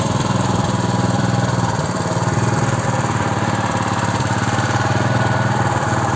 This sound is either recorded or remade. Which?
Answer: remade